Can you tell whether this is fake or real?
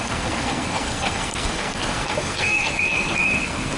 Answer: fake